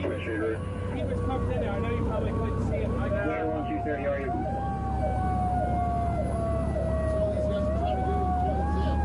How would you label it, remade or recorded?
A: recorded